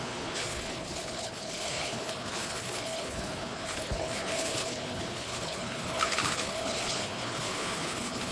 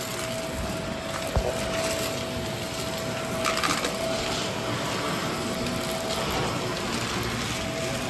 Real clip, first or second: second